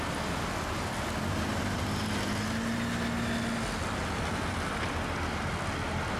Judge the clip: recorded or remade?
recorded